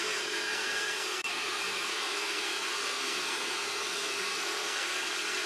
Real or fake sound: fake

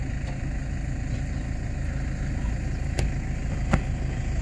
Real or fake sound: real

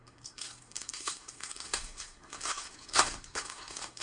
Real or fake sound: fake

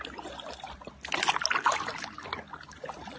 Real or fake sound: real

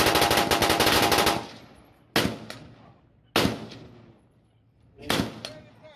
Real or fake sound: real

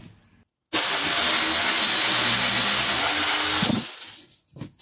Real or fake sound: real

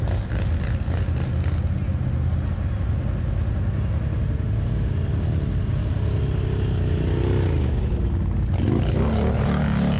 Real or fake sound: real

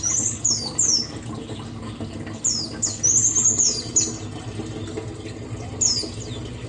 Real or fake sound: real